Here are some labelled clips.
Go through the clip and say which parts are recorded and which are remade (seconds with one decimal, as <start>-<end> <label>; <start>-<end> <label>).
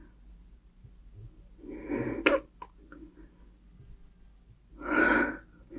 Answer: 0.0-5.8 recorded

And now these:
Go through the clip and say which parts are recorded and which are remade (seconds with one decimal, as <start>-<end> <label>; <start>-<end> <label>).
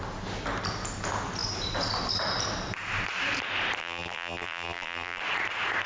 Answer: 0.0-3.8 recorded; 3.8-5.2 remade; 5.2-5.9 recorded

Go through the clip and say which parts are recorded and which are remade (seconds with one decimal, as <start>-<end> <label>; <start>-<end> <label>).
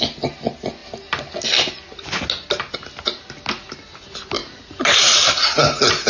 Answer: 0.0-4.4 recorded; 4.4-6.1 remade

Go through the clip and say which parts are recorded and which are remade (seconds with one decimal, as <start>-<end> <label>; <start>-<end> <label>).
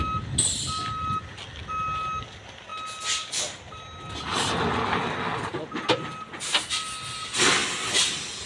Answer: 0.0-8.5 recorded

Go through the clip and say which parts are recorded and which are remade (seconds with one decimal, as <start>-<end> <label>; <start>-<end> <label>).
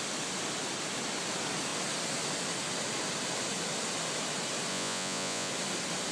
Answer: 0.0-4.7 recorded; 4.7-5.5 remade; 5.5-6.1 recorded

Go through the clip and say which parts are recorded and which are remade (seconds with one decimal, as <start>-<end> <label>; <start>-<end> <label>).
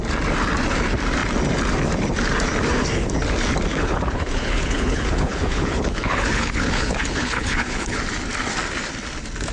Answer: 0.0-3.7 recorded; 3.7-8.0 remade; 8.0-9.5 recorded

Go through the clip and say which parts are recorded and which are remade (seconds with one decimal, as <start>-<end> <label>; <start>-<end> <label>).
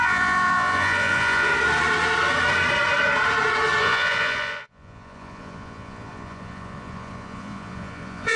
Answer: 0.0-1.5 remade; 1.5-3.8 recorded; 3.8-8.4 remade